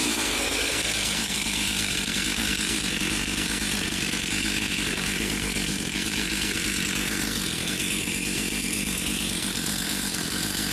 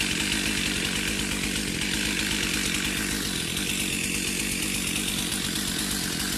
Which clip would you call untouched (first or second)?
second